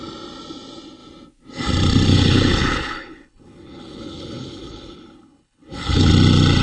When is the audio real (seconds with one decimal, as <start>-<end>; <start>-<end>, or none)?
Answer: 0.0-2.1; 6.1-6.6